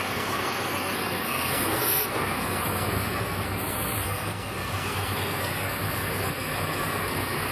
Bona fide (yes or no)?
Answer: no